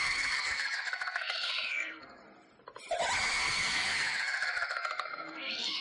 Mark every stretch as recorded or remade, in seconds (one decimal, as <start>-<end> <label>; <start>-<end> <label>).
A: 0.0-2.2 remade; 2.2-3.2 recorded; 3.2-5.8 remade

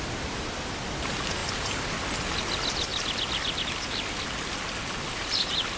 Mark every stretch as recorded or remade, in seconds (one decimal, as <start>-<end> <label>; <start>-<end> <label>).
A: 0.0-5.8 recorded

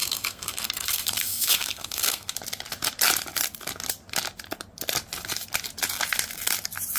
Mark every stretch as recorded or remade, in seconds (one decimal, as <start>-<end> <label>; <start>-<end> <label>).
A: 0.0-2.3 remade; 2.3-7.0 recorded

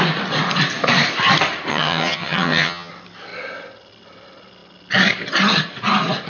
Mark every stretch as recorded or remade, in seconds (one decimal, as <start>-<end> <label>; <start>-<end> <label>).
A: 0.0-1.7 recorded; 1.7-2.9 remade; 2.9-6.3 recorded